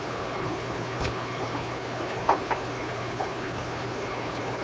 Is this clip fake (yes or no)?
yes